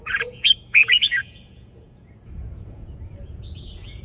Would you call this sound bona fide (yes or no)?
no